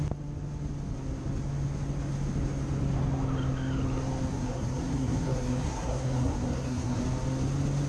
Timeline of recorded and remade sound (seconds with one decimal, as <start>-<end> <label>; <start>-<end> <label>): 0.0-4.3 recorded; 4.3-7.0 remade; 7.0-7.9 recorded